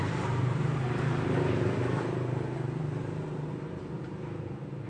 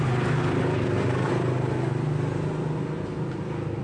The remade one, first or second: first